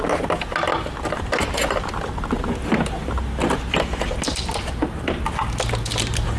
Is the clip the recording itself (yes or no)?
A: yes